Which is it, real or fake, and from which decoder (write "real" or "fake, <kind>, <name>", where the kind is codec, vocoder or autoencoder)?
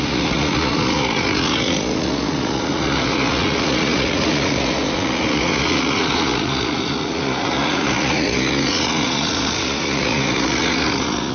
fake, vocoder, Vocos